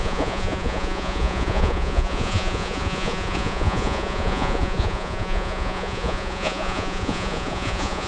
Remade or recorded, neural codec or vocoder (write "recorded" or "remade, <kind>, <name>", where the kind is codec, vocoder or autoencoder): remade, vocoder, Vocos